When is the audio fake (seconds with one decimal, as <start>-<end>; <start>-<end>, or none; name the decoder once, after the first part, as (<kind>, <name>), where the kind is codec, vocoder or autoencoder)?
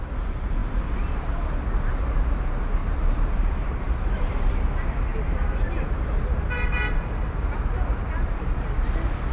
2.8-3.9 (vocoder, BigVGAN v2); 5.1-5.9